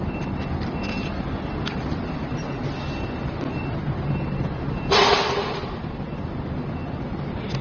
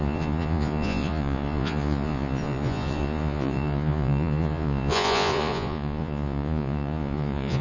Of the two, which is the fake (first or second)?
second